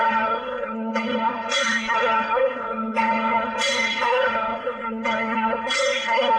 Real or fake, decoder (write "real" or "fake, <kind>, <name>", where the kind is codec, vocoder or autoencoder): fake, codec, SNAC